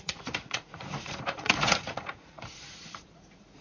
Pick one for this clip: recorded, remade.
remade